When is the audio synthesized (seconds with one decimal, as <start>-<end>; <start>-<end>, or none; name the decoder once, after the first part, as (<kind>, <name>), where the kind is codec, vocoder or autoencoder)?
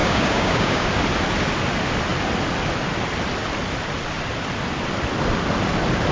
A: 0.0-0.9 (codec, DAC)